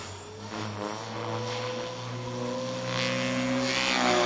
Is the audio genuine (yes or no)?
yes